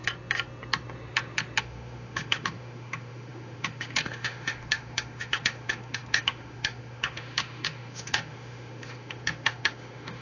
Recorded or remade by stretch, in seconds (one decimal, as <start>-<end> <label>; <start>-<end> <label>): 0.0-1.6 recorded; 1.6-10.2 remade